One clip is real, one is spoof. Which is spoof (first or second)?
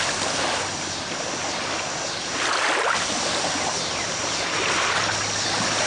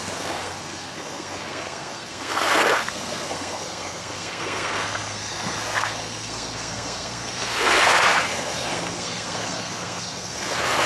second